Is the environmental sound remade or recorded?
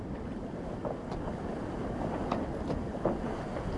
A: recorded